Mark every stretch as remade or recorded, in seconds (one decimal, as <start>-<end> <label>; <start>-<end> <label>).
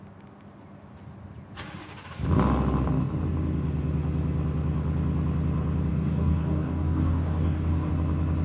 0.0-5.9 recorded; 5.9-7.9 remade; 7.9-8.4 recorded